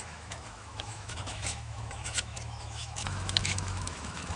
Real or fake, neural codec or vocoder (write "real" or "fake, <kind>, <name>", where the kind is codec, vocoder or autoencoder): fake, autoencoder, DAC-VAE